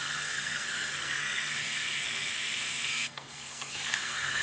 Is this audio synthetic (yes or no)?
yes